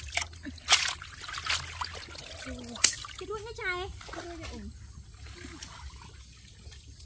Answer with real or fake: real